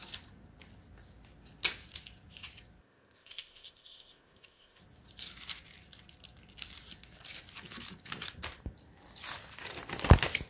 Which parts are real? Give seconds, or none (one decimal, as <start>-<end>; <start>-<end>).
0.0-2.8; 4.8-10.5